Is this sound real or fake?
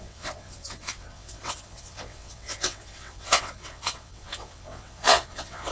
fake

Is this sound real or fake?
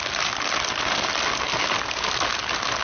real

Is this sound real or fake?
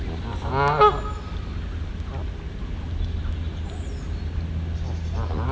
real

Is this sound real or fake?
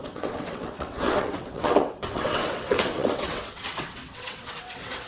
fake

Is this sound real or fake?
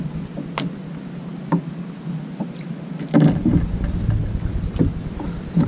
real